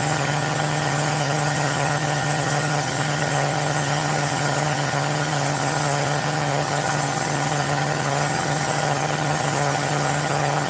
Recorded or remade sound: remade